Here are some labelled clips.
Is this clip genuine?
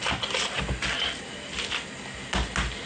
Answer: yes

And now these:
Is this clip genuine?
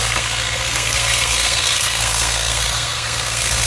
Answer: no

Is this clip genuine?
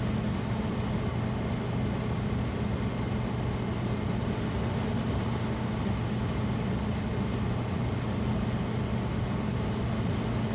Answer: yes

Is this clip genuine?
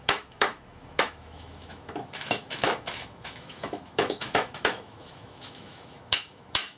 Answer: no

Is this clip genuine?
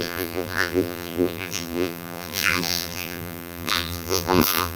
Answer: no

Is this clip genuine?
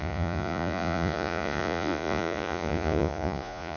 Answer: no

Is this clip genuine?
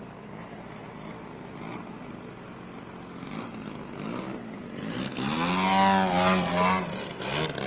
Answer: yes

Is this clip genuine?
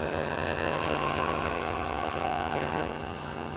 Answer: no